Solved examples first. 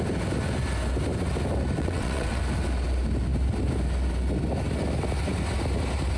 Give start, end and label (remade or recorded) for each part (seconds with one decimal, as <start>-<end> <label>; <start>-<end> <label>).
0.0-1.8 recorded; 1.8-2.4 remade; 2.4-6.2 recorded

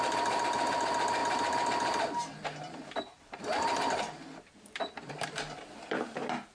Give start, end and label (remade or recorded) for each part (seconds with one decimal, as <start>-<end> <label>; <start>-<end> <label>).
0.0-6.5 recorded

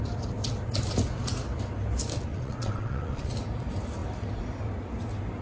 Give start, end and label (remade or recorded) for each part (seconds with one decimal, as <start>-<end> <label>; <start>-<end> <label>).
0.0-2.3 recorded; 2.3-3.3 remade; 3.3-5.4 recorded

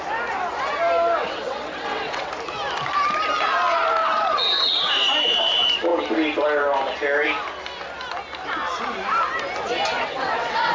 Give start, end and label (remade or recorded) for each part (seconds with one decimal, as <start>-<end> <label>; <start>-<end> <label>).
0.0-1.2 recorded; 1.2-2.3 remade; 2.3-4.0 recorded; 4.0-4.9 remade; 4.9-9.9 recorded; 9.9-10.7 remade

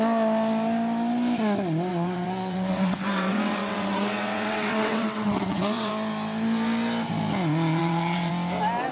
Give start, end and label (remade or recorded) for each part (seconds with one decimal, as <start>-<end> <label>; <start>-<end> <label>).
0.0-1.9 recorded; 1.9-5.9 remade; 5.9-7.8 recorded; 7.8-8.3 remade; 8.3-8.9 recorded

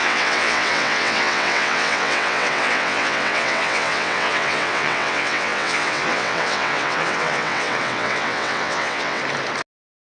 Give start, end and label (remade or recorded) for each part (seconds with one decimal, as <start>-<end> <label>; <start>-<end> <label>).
0.0-9.2 remade; 9.2-10.2 recorded

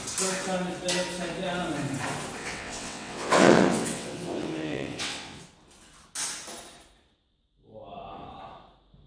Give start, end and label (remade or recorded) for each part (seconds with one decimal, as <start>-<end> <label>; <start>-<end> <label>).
0.0-2.4 recorded; 2.4-5.4 remade; 5.4-9.1 recorded